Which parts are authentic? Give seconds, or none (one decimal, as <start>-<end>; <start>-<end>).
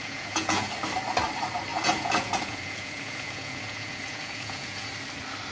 0.7-1.7; 4.9-5.5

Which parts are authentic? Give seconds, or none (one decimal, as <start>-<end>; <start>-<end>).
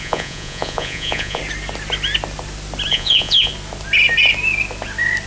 1.4-2.9; 3.5-5.3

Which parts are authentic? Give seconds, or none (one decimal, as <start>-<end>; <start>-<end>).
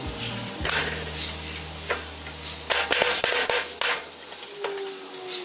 0.0-5.4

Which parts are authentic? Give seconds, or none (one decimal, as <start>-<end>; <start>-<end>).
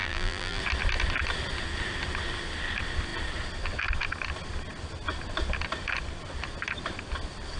0.6-7.6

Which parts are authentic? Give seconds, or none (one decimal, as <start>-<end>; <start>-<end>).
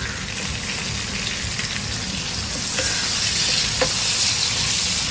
0.0-5.1